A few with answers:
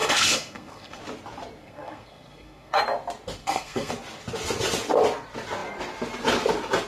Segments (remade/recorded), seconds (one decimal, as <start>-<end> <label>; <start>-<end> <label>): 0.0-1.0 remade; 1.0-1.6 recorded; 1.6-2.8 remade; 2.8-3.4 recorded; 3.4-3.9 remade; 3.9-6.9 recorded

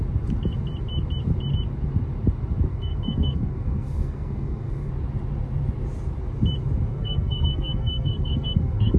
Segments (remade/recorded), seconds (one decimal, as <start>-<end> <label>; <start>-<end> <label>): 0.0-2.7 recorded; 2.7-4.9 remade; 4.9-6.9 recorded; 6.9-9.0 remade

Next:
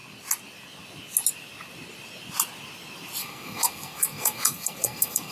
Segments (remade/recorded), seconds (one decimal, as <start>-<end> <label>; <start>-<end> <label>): 0.0-3.2 recorded; 3.2-5.3 remade

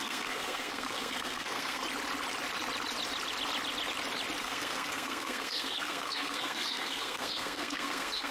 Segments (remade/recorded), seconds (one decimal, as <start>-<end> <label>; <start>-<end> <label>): 0.0-1.8 remade; 1.8-4.4 recorded; 4.4-8.3 remade

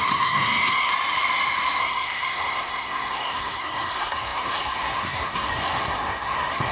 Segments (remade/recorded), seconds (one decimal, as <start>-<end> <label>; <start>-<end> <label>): 0.0-0.9 remade; 0.9-1.8 recorded; 1.8-6.7 remade

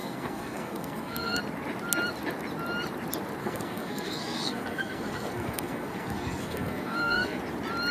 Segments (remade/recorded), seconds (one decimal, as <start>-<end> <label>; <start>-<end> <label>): 0.0-1.4 remade; 1.4-3.4 recorded; 3.4-7.4 remade; 7.4-7.9 recorded

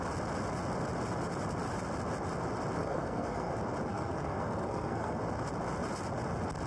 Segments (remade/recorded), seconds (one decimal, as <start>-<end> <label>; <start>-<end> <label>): 0.0-2.8 recorded; 2.8-3.5 remade; 3.5-3.9 recorded; 3.9-5.2 remade; 5.2-6.7 recorded